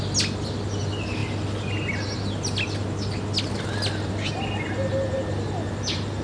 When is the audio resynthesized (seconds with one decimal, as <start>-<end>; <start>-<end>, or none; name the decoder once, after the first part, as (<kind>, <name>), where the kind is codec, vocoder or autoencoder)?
none